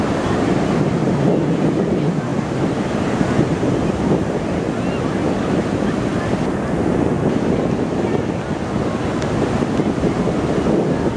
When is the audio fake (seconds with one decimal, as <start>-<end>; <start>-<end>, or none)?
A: 2.3-4.5